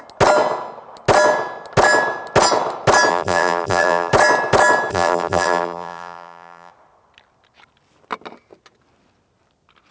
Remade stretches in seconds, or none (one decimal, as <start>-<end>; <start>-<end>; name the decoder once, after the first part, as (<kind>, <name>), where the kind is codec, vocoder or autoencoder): 3.1-4.1 (vocoder, BigVGAN v2); 4.9-6.7